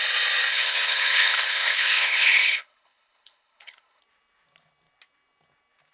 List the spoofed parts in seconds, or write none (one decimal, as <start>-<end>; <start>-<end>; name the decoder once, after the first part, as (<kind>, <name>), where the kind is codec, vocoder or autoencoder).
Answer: 0.5-4.0 (codec, HILCodec)

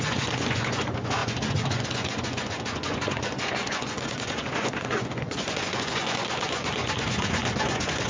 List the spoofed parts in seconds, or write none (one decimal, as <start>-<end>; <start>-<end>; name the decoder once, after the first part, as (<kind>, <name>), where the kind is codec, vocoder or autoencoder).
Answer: 0.0-8.1 (vocoder, Vocos)

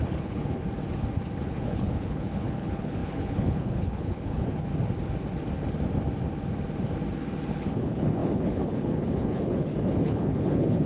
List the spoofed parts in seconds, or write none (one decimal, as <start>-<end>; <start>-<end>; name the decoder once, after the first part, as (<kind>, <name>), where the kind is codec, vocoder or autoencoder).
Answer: 0.0-0.6 (codec, HILCodec); 1.4-4.7; 7.5-10.9

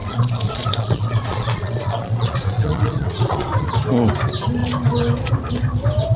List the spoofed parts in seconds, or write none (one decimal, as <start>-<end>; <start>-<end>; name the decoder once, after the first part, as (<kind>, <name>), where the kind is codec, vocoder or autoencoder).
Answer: 0.0-3.7 (vocoder, Vocos)

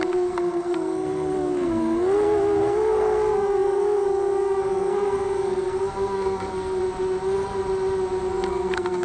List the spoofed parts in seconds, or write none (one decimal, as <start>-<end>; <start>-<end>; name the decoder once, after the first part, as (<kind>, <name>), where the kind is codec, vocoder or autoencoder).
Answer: 0.0-6.8 (codec, SNAC); 8.3-9.0